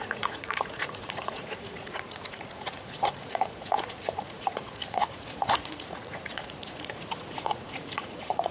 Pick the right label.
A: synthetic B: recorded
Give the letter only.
A